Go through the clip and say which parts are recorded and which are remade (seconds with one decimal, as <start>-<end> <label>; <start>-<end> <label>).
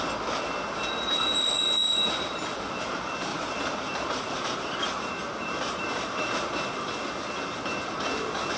0.0-1.8 recorded; 1.8-2.9 remade; 2.9-3.3 recorded; 3.3-6.9 remade; 6.9-8.6 recorded